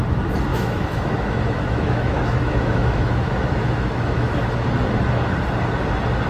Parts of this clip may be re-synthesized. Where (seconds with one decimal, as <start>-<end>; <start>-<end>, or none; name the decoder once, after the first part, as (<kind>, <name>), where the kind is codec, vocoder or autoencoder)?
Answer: 0.5-4.3 (autoencoder, DAC-VAE)